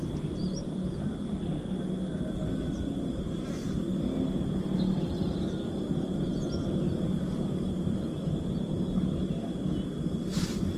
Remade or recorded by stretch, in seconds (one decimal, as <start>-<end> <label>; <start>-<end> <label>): 0.0-10.8 recorded